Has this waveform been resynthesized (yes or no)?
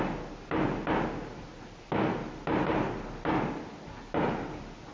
no